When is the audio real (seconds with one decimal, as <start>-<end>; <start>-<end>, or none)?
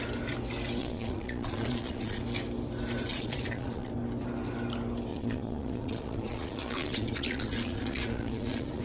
0.0-0.8; 2.2-3.1; 3.9-5.1